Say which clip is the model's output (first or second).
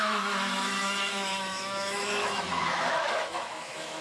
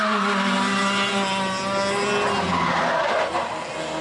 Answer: first